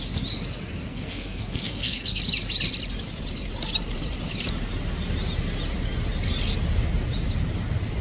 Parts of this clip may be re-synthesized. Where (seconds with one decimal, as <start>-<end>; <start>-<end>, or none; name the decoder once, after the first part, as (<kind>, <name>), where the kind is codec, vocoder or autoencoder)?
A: 0.9-2.2 (codec, SNAC)